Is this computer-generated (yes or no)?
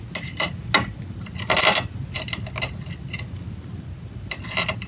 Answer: no